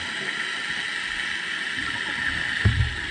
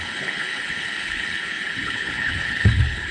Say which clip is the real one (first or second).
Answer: first